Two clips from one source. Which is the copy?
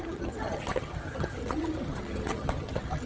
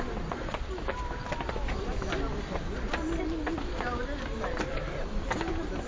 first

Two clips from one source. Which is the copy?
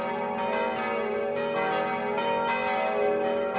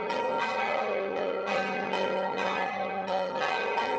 second